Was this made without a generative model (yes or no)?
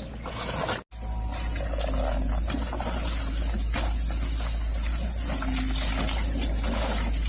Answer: yes